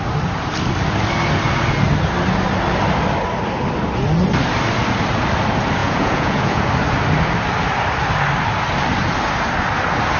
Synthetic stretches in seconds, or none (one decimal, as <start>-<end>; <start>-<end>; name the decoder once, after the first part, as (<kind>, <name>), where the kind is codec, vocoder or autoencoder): 5.8-6.7 (vocoder, Vocos)